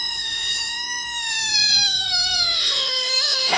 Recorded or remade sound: remade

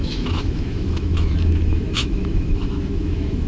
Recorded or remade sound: remade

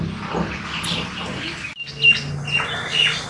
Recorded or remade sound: recorded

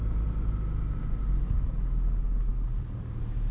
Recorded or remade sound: recorded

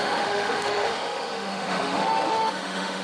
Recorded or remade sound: remade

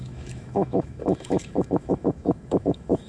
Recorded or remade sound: remade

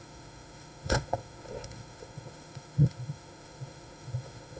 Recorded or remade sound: remade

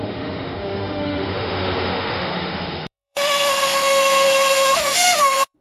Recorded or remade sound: remade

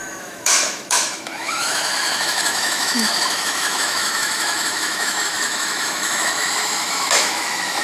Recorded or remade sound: remade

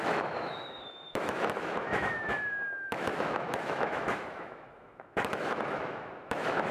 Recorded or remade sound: remade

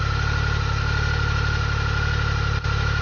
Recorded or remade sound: recorded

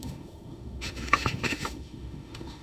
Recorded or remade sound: remade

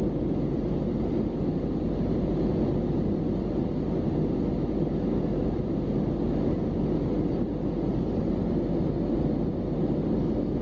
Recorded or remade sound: recorded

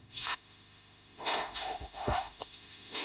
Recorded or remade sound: remade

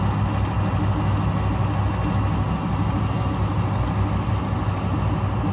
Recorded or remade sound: recorded